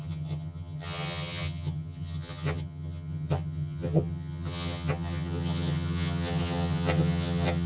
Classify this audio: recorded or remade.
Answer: remade